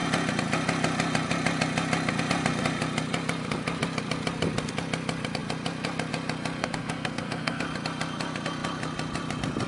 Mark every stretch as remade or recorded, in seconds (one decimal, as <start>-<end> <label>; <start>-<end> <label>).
0.0-6.6 recorded; 6.6-7.6 remade; 7.6-9.7 recorded